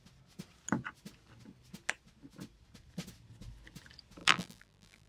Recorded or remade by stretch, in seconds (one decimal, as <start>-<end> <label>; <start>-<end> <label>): 0.0-4.2 recorded; 4.2-5.1 remade